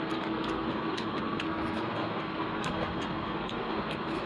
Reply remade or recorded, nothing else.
remade